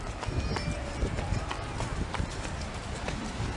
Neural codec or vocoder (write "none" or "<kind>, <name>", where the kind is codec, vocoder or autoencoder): none